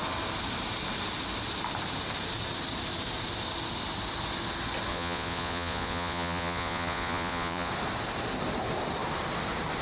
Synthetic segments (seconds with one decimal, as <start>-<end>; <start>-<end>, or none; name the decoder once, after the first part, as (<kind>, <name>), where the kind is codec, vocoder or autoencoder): 4.9-7.7 (vocoder, Vocos)